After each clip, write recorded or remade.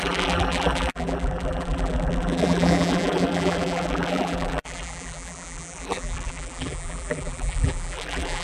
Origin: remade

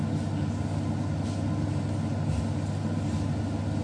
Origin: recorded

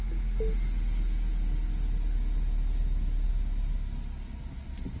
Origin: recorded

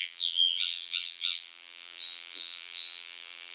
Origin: remade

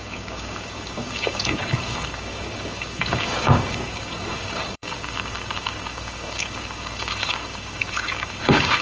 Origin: remade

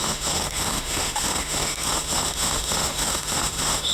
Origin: remade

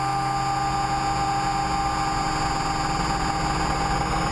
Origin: recorded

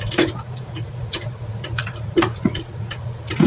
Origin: remade